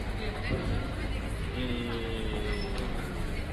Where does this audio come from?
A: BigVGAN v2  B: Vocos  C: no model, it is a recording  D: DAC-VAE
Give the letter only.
C